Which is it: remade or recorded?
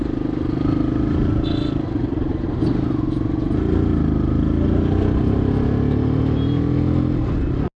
recorded